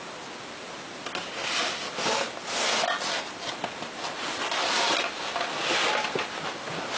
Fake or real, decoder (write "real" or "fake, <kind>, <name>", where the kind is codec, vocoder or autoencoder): real